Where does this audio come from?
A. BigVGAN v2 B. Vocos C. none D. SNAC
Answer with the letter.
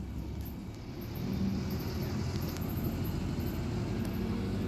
C